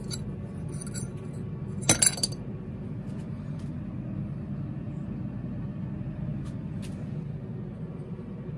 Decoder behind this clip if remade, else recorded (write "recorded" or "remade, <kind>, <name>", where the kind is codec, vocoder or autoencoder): recorded